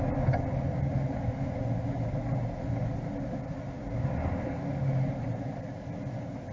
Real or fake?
real